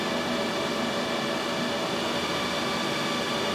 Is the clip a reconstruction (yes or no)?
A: no